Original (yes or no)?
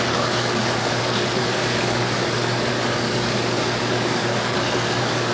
no